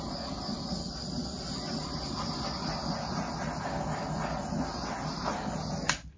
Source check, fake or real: real